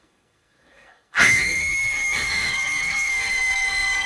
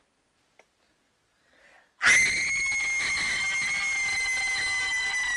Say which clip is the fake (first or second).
first